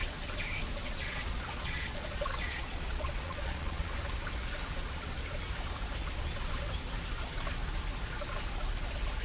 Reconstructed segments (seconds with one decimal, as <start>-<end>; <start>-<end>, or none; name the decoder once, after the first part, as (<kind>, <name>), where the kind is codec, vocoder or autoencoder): 0.8-3.9 (vocoder, Vocos)